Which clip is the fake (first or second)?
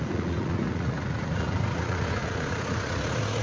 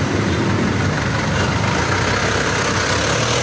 first